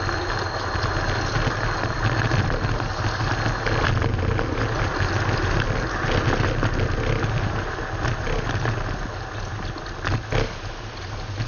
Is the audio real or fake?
real